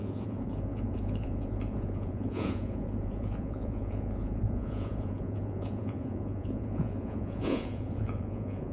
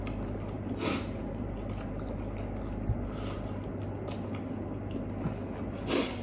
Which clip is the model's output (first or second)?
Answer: first